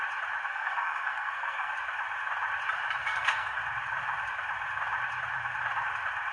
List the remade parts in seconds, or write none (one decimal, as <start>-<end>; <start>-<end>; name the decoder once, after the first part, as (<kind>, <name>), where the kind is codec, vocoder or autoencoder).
0.5-1.7 (codec, SNAC); 3.0-3.6